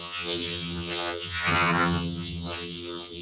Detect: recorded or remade remade